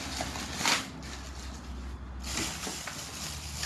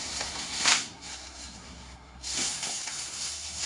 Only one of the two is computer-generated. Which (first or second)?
second